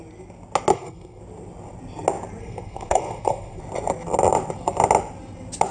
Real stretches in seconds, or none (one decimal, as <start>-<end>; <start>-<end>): 0.0-0.7; 1.2-2.4; 3.6-5.7